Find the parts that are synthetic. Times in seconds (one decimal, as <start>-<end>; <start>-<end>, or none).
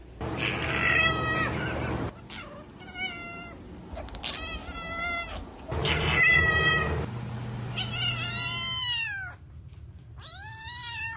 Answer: 5.8-6.7